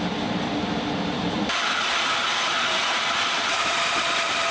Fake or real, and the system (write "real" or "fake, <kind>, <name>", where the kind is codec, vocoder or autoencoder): fake, vocoder, BigVGAN v2